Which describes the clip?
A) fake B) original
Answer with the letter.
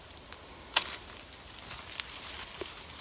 B